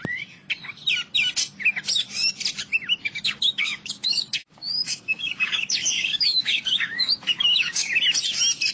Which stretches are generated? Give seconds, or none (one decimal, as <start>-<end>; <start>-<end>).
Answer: 3.0-7.9